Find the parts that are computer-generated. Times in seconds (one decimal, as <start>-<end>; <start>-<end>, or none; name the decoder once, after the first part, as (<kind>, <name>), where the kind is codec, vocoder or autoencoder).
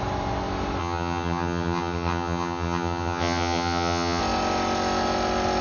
0.8-4.2 (vocoder, HiFi-GAN)